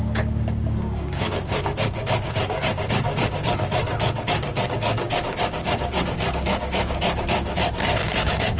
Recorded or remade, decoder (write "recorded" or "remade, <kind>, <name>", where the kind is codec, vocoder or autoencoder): remade, codec, DAC